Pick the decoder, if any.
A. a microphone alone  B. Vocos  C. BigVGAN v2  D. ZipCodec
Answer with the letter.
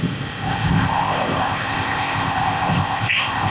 D